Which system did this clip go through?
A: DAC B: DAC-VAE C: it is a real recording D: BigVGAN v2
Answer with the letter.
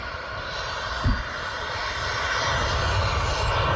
C